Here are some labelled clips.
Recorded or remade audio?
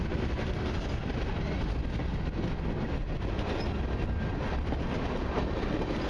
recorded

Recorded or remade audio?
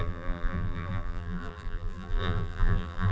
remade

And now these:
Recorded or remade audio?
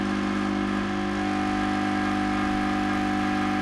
recorded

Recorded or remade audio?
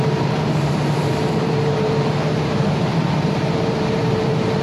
remade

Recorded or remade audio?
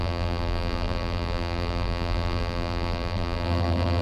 remade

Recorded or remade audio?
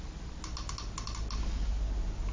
recorded